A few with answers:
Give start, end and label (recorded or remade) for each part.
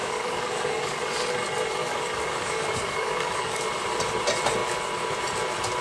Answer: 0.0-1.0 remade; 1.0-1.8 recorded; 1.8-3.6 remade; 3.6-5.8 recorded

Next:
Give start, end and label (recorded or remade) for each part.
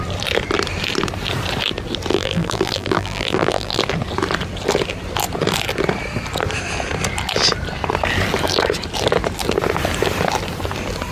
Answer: 0.0-2.1 recorded; 2.1-3.8 remade; 3.8-11.1 recorded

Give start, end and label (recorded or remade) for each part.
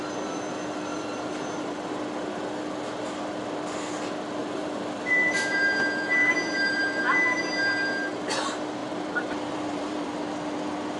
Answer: 0.0-0.9 recorded; 0.9-1.9 remade; 1.9-4.4 recorded; 4.4-7.0 remade; 7.0-8.8 recorded; 8.8-10.2 remade; 10.2-11.0 recorded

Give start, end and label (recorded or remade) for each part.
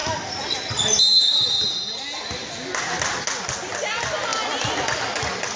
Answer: 0.0-5.6 recorded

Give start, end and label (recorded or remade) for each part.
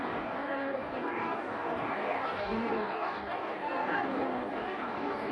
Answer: 0.0-5.3 remade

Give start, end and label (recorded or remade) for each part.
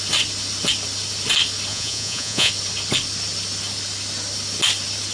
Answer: 0.0-1.7 recorded; 1.7-2.5 remade; 2.5-5.1 recorded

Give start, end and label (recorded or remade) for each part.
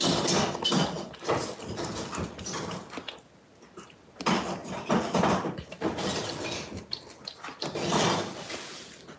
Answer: 0.0-9.2 recorded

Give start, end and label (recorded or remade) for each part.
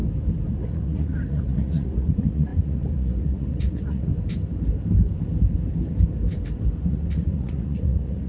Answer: 0.0-0.5 recorded; 0.5-4.1 remade; 4.1-6.9 recorded; 6.9-8.3 remade